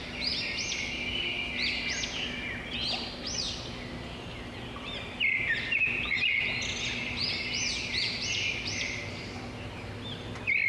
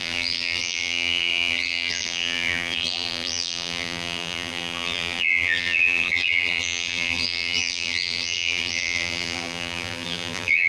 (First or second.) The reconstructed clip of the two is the second